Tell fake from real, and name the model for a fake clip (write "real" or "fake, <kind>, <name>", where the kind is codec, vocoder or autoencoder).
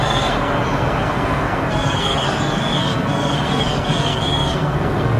fake, codec, SNAC